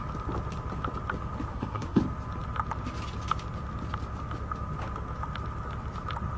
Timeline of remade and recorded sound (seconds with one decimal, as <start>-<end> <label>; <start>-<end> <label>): 0.0-1.5 recorded; 1.5-2.0 remade; 2.0-6.4 recorded